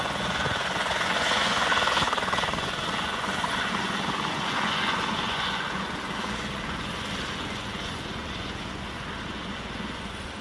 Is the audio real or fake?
fake